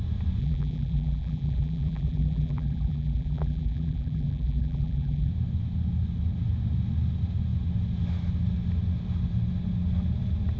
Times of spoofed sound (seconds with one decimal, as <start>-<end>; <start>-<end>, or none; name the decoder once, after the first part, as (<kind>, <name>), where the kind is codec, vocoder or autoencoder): 0.4-5.3 (vocoder, BigVGAN v2)